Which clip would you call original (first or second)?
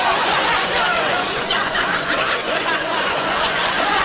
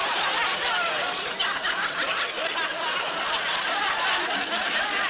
second